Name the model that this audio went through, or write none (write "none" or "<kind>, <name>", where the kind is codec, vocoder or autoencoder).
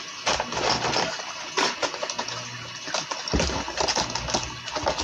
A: none